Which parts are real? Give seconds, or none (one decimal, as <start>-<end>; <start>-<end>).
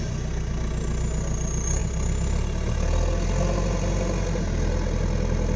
0.0-5.6